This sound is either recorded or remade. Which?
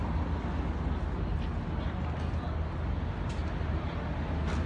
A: recorded